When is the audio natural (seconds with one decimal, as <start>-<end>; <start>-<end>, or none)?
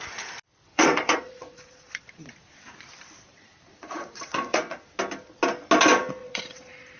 0.0-0.7; 2.3-3.3; 4.8-6.2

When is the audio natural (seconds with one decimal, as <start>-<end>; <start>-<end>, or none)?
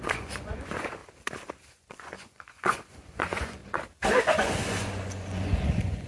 1.0-1.7; 3.6-4.2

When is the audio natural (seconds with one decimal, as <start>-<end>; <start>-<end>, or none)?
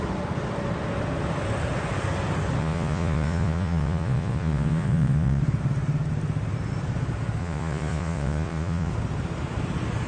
0.0-2.6; 5.4-7.4; 8.9-10.1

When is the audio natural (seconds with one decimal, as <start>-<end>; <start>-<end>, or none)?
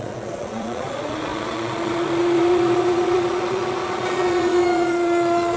none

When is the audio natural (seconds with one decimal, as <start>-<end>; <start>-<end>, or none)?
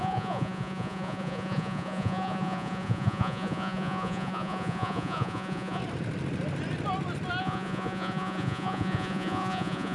5.8-7.4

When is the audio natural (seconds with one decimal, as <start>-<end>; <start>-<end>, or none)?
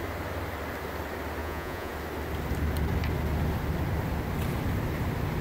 0.0-1.4; 1.9-5.4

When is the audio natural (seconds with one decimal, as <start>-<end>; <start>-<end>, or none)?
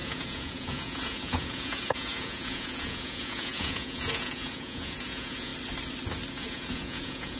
5.5-6.3